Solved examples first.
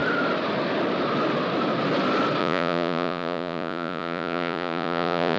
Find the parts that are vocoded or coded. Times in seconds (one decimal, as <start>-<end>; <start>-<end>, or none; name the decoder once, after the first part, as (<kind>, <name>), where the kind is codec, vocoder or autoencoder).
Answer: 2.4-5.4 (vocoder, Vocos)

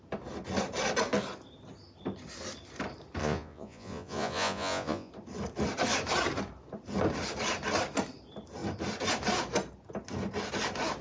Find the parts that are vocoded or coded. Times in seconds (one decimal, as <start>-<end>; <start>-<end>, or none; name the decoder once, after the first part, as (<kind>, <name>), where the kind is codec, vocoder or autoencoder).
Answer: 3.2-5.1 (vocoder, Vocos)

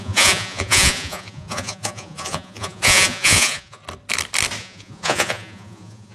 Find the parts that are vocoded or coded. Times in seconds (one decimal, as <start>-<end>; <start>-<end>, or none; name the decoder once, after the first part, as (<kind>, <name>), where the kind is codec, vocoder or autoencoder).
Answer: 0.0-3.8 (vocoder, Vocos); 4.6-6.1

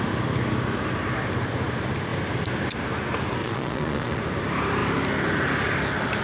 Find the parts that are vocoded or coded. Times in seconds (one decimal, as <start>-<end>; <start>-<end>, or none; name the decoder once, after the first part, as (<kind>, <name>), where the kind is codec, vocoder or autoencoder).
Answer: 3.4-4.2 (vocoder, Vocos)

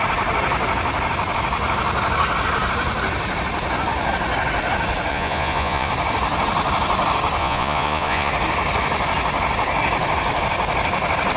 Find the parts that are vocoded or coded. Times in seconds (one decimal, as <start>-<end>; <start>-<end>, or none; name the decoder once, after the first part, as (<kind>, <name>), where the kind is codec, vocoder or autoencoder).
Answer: 5.1-5.9 (vocoder, Vocos); 7.4-8.3

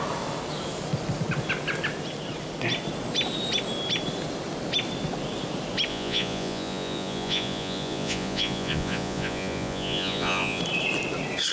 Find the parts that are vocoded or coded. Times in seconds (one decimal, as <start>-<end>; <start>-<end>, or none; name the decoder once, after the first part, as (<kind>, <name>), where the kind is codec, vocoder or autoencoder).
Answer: 5.9-10.6 (vocoder, Vocos)

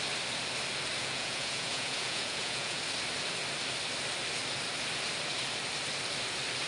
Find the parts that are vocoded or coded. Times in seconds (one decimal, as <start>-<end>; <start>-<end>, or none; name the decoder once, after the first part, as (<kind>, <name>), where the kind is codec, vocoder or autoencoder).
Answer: 1.0-2.8 (vocoder, Vocos)